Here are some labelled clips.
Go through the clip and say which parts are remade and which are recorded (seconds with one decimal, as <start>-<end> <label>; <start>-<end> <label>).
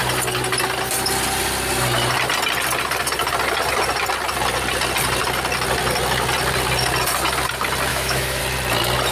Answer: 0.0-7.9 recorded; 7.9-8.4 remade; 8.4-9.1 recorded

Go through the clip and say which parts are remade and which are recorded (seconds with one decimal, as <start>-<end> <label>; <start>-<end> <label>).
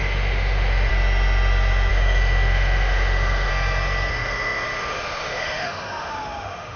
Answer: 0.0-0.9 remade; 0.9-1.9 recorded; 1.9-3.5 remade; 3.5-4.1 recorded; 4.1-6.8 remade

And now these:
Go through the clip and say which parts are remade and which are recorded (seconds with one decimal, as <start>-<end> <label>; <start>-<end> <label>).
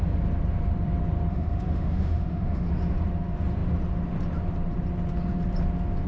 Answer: 0.0-1.3 recorded; 1.3-2.7 remade; 2.7-6.1 recorded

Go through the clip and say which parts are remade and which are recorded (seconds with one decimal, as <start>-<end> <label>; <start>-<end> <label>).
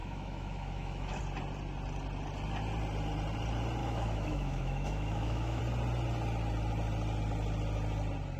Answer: 0.0-1.2 remade; 1.2-3.8 recorded; 3.8-5.6 remade; 5.6-8.4 recorded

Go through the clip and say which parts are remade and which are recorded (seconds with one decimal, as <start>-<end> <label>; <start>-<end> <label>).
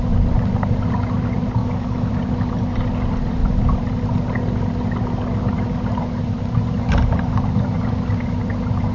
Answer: 0.0-1.6 recorded; 1.6-2.1 remade; 2.1-8.9 recorded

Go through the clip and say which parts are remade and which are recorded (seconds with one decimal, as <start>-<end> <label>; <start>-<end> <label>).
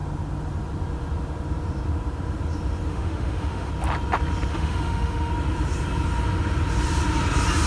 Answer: 0.0-2.9 recorded; 2.9-3.7 remade; 3.7-4.5 recorded; 4.5-5.3 remade; 5.3-7.7 recorded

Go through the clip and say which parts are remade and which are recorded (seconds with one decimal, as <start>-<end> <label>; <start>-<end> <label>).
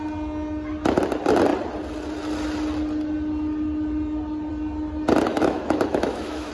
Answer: 0.0-5.3 recorded; 5.3-6.5 remade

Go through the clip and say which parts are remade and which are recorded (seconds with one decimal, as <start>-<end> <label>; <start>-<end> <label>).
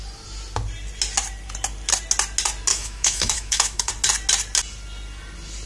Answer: 0.0-2.7 recorded; 2.7-3.9 remade; 3.9-5.7 recorded